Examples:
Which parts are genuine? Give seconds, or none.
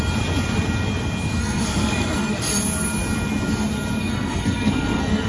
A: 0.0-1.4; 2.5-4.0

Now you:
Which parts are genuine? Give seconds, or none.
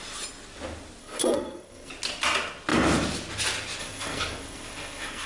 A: 0.0-1.0; 1.9-3.8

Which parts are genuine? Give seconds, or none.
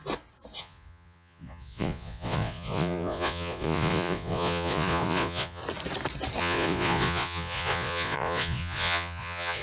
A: 0.0-0.6; 5.6-6.4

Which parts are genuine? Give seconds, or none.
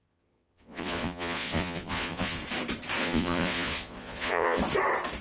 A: 2.4-3.0; 4.6-5.2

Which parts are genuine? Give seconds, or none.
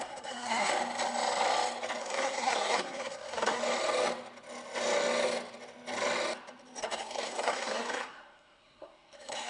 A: 0.7-2.0; 3.6-6.8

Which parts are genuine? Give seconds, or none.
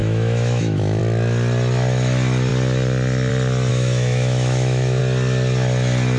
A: 1.0-3.7; 5.0-6.2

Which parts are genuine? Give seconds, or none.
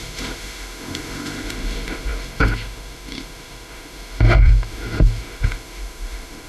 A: none